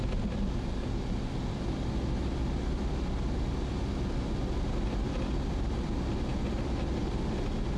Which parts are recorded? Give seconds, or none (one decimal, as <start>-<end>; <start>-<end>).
0.0-7.8